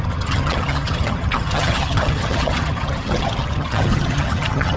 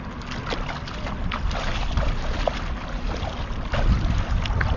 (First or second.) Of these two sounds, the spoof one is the first